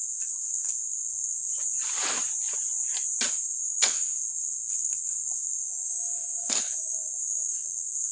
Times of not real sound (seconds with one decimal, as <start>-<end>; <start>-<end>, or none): 0.0-1.5; 3.3-8.1